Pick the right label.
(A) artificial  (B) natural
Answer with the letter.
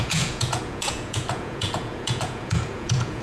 A